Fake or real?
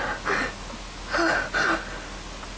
real